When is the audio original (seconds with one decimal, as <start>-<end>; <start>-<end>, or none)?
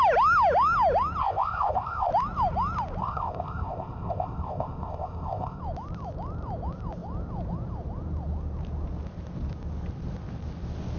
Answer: 0.0-1.2; 2.1-3.0; 5.6-11.0